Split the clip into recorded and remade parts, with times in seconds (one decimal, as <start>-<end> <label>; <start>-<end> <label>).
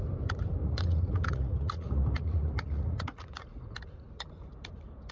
0.0-0.6 recorded; 0.6-3.7 remade; 3.7-5.1 recorded